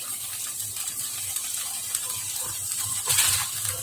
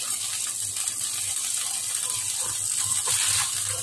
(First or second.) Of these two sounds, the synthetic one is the first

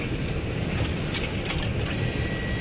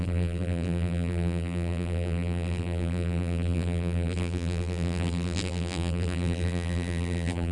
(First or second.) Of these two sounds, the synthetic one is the second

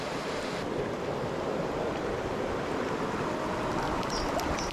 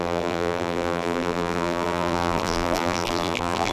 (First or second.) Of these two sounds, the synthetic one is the second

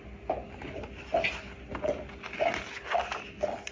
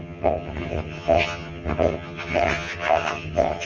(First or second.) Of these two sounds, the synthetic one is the second